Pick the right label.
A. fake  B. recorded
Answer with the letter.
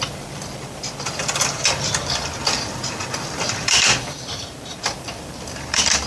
A